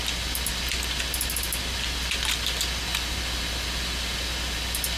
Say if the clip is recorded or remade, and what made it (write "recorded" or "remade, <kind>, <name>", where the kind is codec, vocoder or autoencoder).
recorded